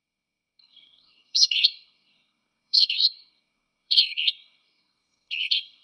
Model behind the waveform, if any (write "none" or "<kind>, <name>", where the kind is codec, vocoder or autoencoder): codec, SNAC